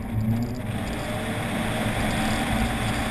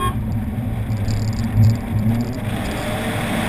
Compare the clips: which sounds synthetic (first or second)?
second